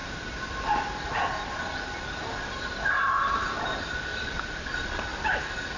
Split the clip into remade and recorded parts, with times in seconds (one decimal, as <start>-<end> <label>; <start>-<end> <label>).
0.0-4.1 recorded; 4.1-5.8 remade